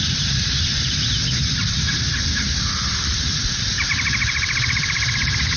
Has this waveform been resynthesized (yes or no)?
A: yes